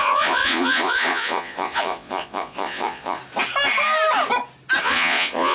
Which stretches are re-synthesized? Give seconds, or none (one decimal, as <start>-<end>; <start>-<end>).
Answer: 0.0-3.2; 4.8-5.5